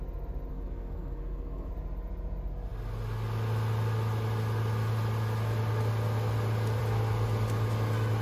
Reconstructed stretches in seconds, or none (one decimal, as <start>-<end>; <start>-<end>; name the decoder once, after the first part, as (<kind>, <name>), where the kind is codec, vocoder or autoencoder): 0.5-1.7 (codec, SNAC)